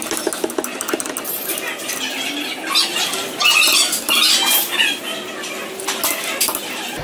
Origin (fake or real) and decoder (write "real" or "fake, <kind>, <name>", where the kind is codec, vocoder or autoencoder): real